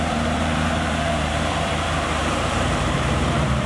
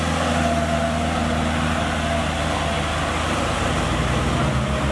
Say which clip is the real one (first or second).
second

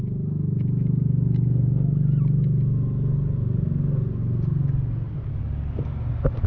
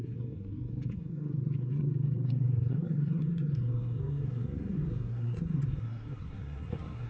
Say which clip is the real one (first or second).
first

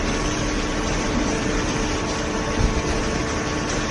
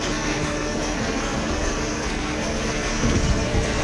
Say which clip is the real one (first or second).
first